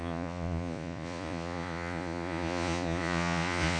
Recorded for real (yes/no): no